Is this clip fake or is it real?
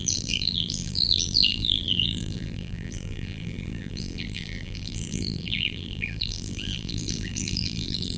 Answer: fake